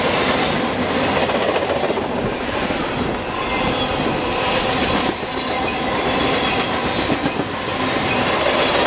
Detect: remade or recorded recorded